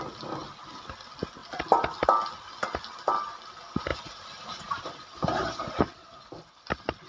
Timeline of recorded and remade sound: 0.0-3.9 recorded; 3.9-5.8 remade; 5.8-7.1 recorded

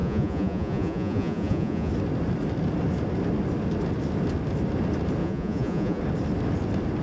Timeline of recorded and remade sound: 0.0-1.9 remade; 1.9-5.2 recorded; 5.2-6.0 remade; 6.0-7.0 recorded

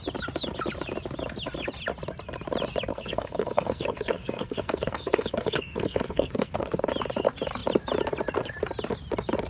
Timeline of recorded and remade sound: 0.0-2.9 recorded; 2.9-6.8 remade; 6.8-9.5 recorded